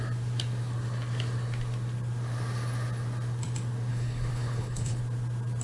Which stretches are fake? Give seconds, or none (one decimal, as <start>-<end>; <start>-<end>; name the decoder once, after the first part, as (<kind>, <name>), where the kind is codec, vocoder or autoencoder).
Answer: 3.9-5.0 (codec, HILCodec)